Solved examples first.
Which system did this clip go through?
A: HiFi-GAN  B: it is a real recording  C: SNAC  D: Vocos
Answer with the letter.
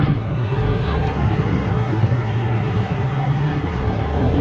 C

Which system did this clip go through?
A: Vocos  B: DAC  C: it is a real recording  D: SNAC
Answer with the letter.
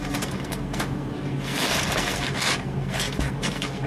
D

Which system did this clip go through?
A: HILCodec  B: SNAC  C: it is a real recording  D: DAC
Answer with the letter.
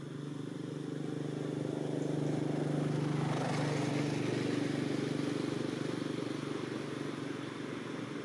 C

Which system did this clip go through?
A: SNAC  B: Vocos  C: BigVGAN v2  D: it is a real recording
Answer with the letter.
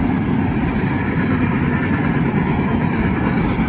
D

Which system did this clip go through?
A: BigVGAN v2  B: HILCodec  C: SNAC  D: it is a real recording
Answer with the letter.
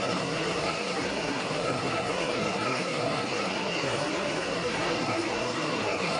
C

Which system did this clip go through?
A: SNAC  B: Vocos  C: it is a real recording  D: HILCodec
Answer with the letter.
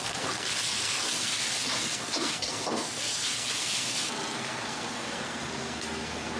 A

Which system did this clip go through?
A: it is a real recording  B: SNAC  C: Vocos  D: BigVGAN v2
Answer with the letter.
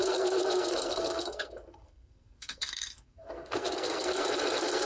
B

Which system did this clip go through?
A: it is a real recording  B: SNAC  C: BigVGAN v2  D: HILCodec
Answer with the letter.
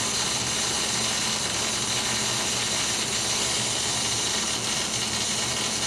A